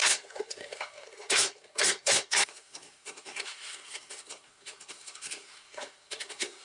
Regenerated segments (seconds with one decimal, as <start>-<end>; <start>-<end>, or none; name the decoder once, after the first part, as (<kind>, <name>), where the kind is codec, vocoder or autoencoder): 0.0-6.6 (codec, SNAC)